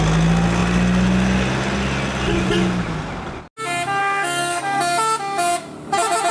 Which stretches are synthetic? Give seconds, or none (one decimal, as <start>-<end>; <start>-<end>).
4.0-4.8